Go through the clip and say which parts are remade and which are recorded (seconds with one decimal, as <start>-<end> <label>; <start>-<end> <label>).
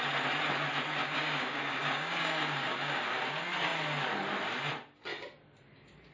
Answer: 0.0-1.0 recorded; 1.0-3.1 remade; 3.1-6.1 recorded